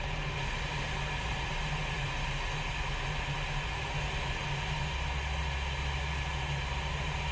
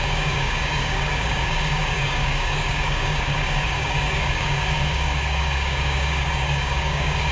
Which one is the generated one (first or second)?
second